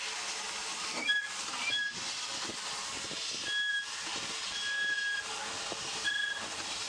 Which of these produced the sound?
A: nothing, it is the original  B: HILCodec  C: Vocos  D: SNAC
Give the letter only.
A